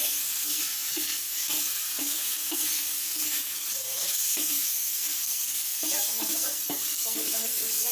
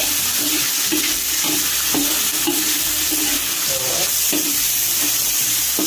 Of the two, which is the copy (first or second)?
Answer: first